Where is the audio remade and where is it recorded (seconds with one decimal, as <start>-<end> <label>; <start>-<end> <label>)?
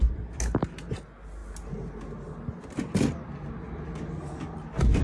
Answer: 0.0-5.0 recorded